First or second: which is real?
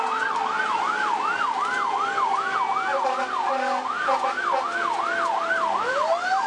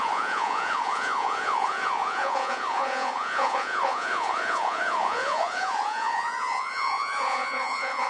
first